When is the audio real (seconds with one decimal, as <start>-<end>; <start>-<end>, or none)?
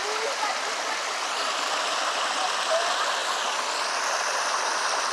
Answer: 0.7-5.1